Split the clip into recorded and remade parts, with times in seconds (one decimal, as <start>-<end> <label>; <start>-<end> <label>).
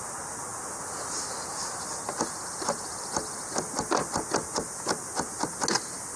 0.0-6.2 recorded